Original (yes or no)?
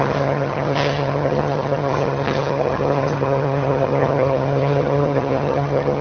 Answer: no